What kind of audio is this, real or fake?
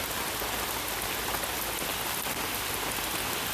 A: real